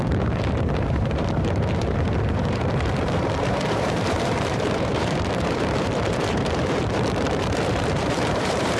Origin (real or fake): fake